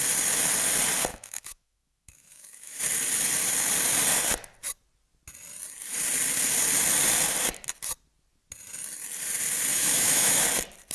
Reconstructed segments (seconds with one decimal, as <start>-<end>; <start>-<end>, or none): 1.1-2.8; 9.7-10.5